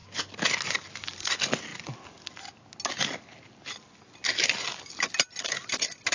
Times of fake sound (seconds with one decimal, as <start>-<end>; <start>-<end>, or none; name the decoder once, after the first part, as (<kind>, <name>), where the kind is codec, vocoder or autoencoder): none